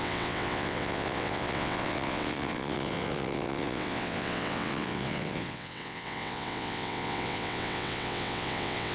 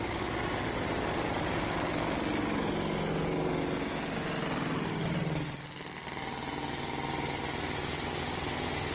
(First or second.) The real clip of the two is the second